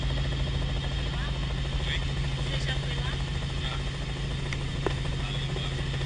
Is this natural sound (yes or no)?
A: yes